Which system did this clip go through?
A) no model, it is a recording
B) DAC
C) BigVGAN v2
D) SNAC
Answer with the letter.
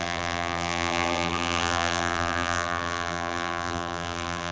C